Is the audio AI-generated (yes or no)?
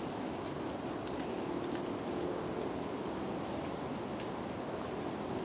no